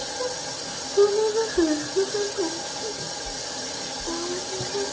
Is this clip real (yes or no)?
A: yes